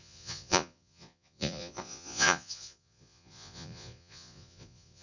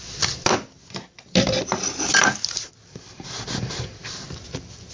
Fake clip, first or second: first